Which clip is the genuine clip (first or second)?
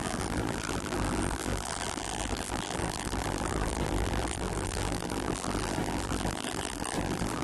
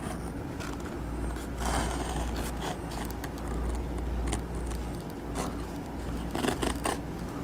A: second